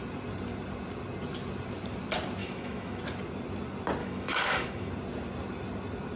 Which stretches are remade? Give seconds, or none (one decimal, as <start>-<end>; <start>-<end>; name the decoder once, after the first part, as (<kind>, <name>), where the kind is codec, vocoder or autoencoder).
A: 2.4-3.0 (autoencoder, DAC-VAE); 4.0-4.9